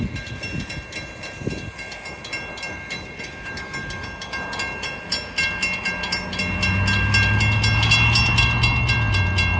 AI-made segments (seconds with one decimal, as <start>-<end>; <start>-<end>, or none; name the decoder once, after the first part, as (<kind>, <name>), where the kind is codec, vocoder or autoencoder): none